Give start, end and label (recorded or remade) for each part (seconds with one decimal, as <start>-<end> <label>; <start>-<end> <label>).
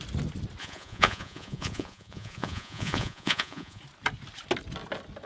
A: 0.0-0.6 recorded; 0.6-3.8 remade; 3.8-5.3 recorded